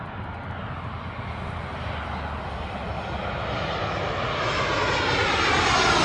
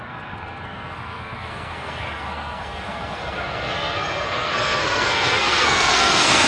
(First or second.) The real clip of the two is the first